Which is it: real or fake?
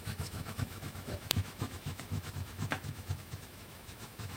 fake